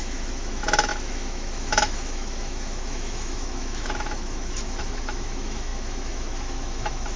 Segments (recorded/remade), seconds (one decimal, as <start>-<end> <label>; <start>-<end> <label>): 0.0-7.2 remade